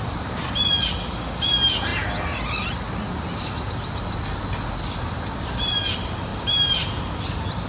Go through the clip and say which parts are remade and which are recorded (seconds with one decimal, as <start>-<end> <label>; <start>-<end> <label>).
0.0-7.7 recorded